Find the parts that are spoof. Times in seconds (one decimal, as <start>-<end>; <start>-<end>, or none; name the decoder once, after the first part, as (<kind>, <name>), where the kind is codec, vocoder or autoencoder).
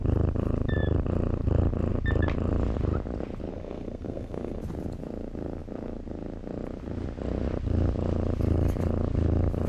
3.5-4.6 (codec, SNAC)